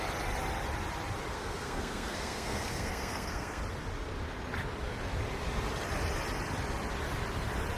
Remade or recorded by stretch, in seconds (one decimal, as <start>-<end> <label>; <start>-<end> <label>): 0.0-1.3 recorded; 1.3-3.6 remade; 3.6-7.8 recorded